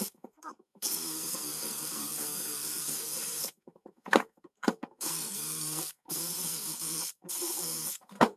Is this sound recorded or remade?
remade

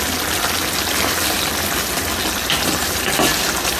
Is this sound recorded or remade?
recorded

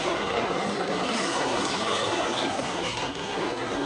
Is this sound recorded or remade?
remade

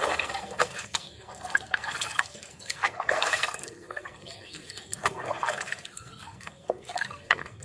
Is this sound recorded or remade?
remade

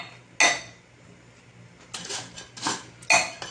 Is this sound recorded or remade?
recorded